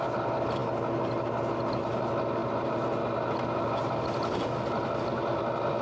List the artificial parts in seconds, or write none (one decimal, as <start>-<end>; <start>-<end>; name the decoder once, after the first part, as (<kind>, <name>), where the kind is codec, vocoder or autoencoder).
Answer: none